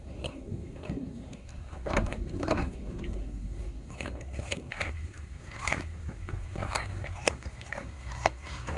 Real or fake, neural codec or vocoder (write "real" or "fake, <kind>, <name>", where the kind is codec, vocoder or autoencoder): fake, codec, SNAC